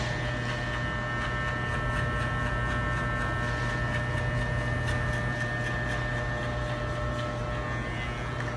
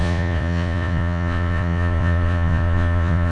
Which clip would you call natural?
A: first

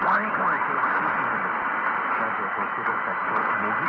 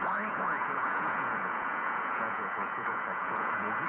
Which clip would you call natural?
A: first